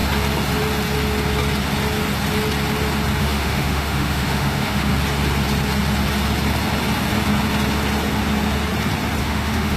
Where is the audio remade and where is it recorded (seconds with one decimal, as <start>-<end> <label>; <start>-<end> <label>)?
0.0-3.2 recorded; 3.2-4.9 remade; 4.9-9.2 recorded; 9.2-9.8 remade